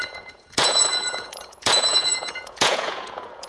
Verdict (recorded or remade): remade